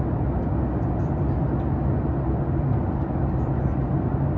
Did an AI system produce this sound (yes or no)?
no